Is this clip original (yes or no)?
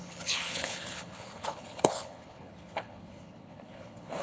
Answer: no